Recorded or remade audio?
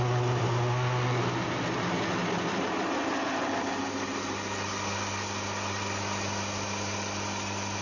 recorded